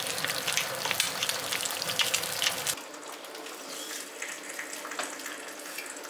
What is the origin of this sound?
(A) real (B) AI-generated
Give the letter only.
A